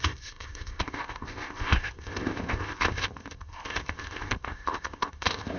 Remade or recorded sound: remade